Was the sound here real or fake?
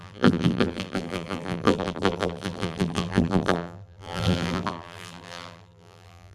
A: fake